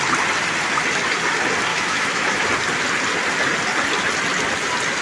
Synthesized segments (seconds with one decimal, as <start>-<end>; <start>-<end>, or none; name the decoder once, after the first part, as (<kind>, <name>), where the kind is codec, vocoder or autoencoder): 1.7-2.5 (autoencoder, DAC-VAE)